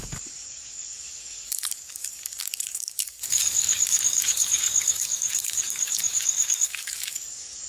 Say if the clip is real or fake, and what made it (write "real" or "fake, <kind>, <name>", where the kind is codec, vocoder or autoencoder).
fake, codec, DAC